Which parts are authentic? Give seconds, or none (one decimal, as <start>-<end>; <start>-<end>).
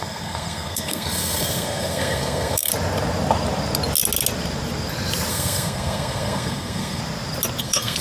2.7-5.3; 7.0-7.6